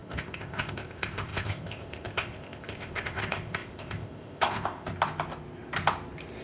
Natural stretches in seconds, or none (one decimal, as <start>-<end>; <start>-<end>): 4.9-6.4